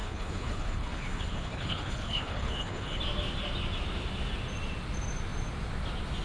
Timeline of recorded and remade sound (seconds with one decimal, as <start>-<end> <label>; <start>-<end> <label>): 0.0-3.0 remade; 3.0-6.2 recorded